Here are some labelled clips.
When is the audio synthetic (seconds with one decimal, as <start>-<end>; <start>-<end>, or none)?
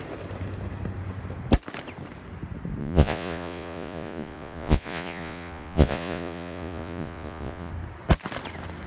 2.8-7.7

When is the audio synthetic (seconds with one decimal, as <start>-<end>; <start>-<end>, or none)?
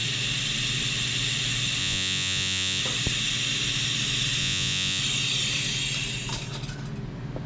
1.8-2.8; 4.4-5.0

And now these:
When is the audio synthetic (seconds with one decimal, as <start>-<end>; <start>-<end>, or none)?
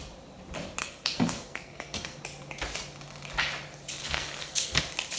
0.8-2.2; 4.0-4.8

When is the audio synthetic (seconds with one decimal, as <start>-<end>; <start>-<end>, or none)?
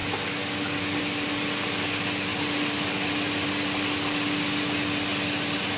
none